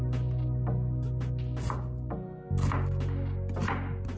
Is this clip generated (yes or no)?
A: no